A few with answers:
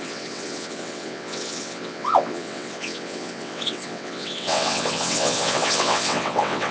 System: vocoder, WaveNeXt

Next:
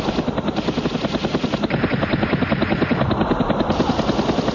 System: none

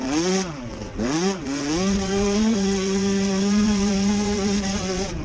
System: vocoder, WaveNeXt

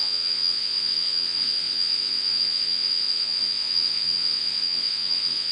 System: vocoder, WaveNeXt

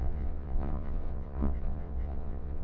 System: vocoder, WaveNeXt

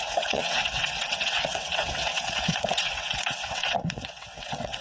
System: vocoder, WaveNeXt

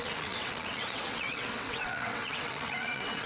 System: vocoder, WaveNeXt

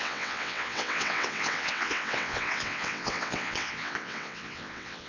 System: vocoder, WaveNeXt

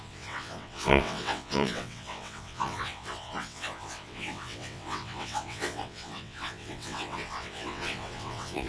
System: vocoder, WaveNeXt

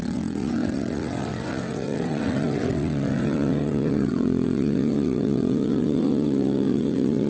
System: vocoder, WaveNeXt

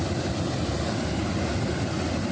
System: none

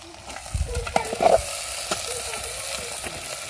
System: none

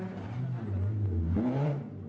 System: none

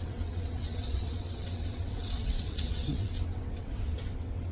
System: vocoder, WaveNeXt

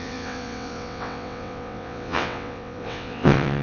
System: vocoder, WaveNeXt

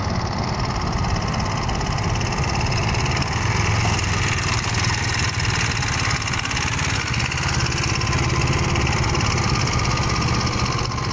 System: none